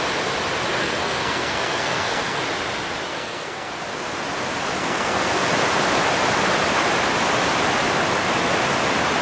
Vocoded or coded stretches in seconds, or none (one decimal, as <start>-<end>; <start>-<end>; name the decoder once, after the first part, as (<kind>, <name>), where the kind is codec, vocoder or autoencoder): 0.8-2.4 (codec, SNAC); 3.1-3.7; 4.8-5.5